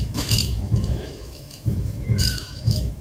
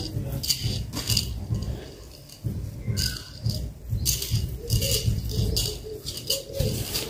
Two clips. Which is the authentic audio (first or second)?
second